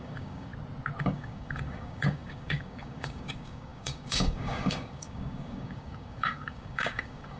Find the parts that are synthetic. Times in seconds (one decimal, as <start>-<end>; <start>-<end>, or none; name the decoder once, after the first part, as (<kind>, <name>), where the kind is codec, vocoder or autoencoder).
0.0-0.5 (codec, DAC); 1.0-7.4